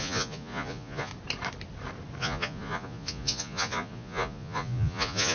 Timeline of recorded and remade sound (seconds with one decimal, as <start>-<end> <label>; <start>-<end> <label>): 0.0-1.1 remade; 1.1-2.2 recorded; 2.2-5.3 remade